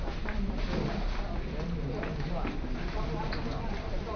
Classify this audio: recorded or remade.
recorded